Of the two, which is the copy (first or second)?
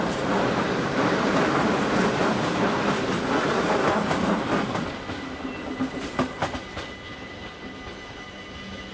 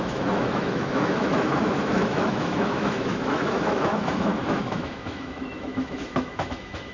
second